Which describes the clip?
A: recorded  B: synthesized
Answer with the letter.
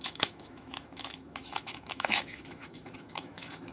B